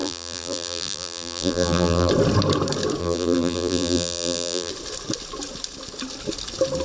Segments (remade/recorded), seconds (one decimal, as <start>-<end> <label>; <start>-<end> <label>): 0.0-2.1 remade; 2.1-3.0 recorded; 3.0-4.7 remade; 4.7-6.8 recorded